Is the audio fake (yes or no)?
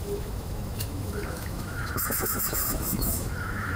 yes